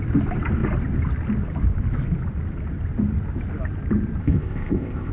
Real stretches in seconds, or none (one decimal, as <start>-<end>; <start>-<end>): 0.0-4.2